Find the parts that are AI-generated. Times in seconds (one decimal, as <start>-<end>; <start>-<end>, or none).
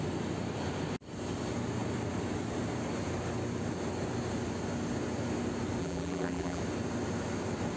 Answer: 5.8-6.6